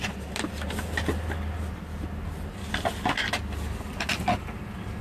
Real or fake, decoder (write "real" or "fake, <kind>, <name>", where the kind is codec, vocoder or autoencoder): real